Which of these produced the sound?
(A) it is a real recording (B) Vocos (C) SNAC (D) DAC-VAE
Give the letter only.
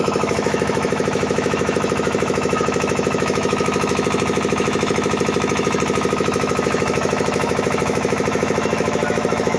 D